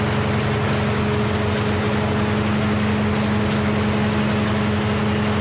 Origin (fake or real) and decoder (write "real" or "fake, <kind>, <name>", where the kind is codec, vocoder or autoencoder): real